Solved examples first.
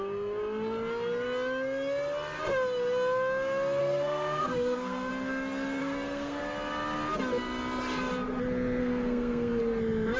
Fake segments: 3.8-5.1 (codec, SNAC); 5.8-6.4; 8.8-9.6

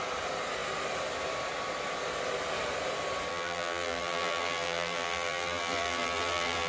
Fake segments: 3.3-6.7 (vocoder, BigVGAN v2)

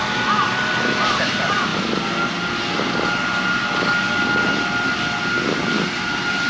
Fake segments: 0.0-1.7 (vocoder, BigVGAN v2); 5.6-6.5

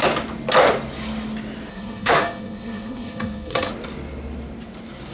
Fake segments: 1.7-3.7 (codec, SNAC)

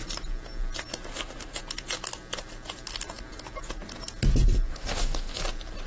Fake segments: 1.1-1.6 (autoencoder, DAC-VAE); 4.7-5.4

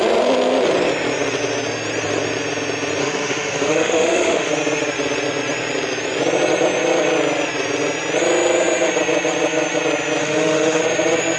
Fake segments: 3.0-4.5 (autoencoder, DAC-VAE); 10.2-10.8